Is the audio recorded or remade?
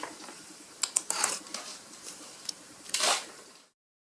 remade